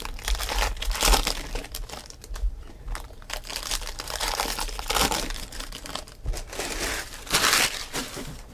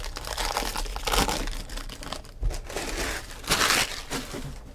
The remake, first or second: first